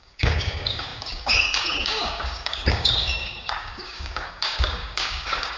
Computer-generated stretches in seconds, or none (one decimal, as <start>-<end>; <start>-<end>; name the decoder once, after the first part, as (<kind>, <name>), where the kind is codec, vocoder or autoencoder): 0.0-5.6 (codec, DAC)